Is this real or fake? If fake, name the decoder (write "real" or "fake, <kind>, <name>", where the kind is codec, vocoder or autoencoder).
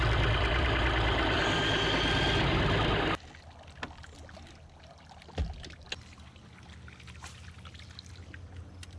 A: real